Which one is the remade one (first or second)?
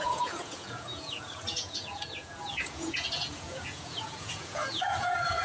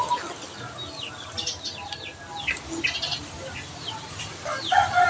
first